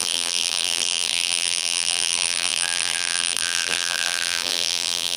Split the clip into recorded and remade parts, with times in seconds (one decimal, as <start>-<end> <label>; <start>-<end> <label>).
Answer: 0.0-5.2 remade